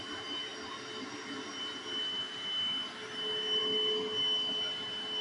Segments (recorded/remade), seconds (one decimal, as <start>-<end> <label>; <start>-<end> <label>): 0.0-5.2 recorded